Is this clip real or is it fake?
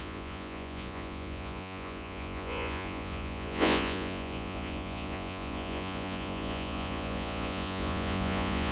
fake